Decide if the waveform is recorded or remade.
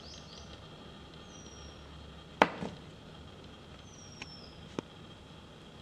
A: recorded